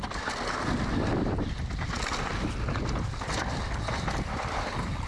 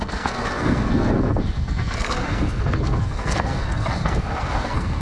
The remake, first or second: second